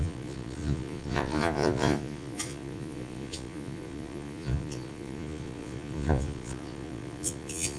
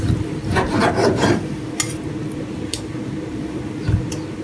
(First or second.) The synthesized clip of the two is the first